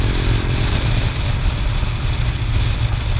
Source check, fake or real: real